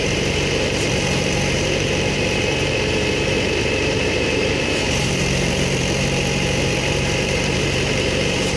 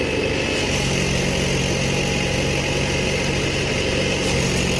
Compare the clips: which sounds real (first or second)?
second